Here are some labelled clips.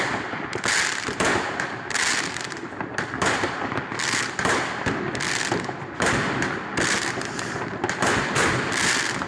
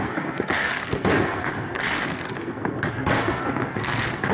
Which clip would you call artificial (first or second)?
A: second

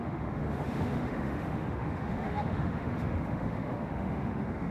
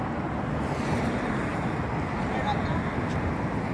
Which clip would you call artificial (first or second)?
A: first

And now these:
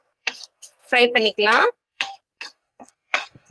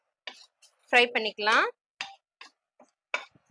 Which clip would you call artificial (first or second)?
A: first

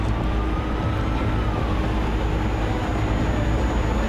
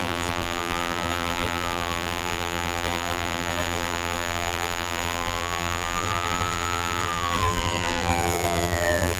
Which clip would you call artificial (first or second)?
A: second